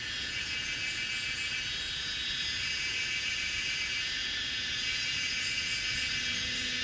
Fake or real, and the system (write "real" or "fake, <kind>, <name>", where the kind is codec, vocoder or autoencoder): fake, vocoder, Vocos